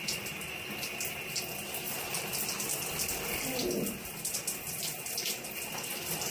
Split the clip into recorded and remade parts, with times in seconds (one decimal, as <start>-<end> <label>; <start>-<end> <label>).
0.0-3.3 recorded; 3.3-5.2 remade; 5.2-6.3 recorded